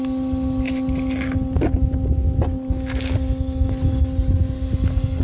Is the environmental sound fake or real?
real